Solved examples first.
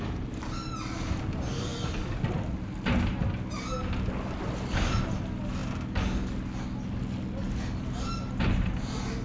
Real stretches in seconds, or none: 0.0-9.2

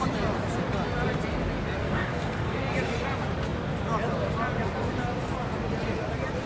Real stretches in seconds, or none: 0.0-1.8; 2.6-6.5

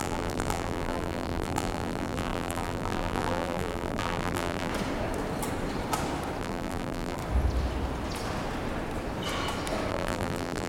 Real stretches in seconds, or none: 4.7-6.4; 7.2-9.9

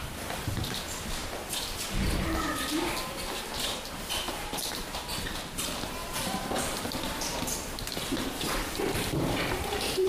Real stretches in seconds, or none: 0.0-1.2; 5.0-6.0; 9.5-10.1

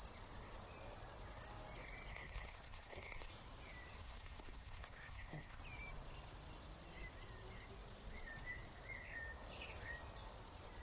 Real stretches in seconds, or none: 0.0-2.1; 3.3-4.0; 5.6-10.8

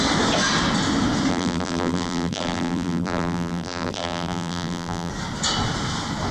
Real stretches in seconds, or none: 0.0-1.3; 5.1-6.3